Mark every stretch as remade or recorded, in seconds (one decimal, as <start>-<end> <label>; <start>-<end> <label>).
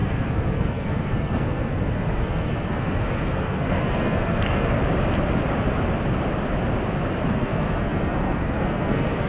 0.0-4.8 remade; 4.8-7.3 recorded; 7.3-9.3 remade